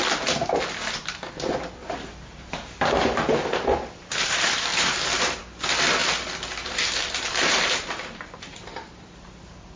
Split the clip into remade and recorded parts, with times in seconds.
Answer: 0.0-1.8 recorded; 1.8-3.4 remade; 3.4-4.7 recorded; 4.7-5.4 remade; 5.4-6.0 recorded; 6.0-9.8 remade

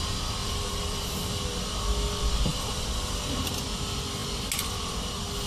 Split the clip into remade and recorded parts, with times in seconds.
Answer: 0.0-0.4 recorded; 0.4-1.4 remade; 1.4-2.5 recorded; 2.5-3.2 remade; 3.2-5.5 recorded

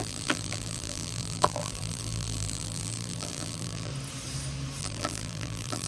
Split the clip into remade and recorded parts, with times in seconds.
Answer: 0.0-3.9 remade; 3.9-4.8 recorded; 4.8-5.9 remade